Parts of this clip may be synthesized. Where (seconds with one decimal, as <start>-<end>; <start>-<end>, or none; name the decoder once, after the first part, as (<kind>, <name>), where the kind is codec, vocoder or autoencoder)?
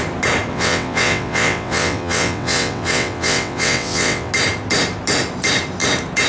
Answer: 0.5-4.3 (vocoder, WaveNeXt)